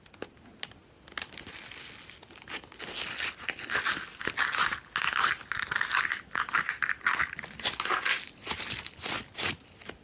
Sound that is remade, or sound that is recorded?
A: recorded